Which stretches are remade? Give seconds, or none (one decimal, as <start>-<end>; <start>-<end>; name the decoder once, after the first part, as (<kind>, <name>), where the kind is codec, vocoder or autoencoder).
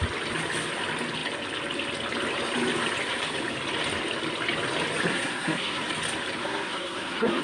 5.1-5.8 (codec, SNAC); 6.4-7.4